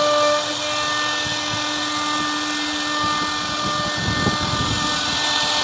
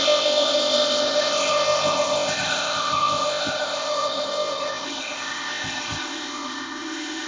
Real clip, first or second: first